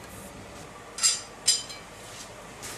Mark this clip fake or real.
real